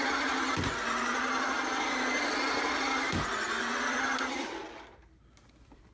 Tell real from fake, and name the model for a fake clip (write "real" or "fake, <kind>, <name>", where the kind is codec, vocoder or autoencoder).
real